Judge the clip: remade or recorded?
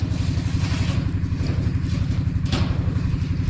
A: recorded